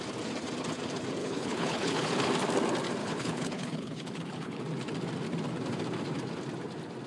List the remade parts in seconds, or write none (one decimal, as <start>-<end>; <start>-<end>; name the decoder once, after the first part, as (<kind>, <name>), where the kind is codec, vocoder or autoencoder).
1.2-2.1 (codec, HILCodec); 3.0-4.6